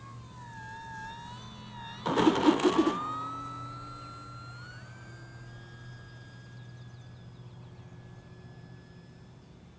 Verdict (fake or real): real